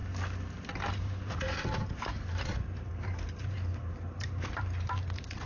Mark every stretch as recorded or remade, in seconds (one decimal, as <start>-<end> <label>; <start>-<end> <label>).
0.0-0.9 recorded; 0.9-5.5 remade